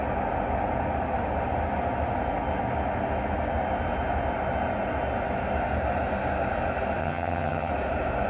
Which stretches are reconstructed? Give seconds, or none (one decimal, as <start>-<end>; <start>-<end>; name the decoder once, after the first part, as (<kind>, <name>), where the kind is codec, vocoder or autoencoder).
7.0-7.7 (vocoder, HiFi-GAN)